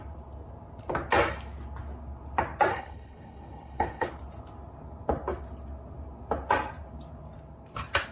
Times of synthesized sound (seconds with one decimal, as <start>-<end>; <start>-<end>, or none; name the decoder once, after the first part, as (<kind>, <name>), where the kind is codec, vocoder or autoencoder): 2.7-4.1 (codec, HILCodec)